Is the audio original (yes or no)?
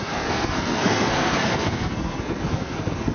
no